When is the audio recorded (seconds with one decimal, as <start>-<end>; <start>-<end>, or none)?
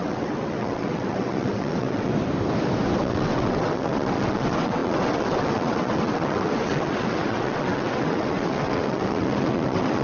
2.1-3.0